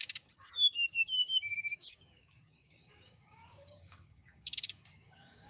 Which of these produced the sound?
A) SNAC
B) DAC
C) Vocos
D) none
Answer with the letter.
B